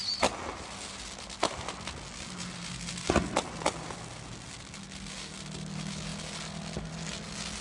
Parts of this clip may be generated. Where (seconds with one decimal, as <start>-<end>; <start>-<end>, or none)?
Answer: none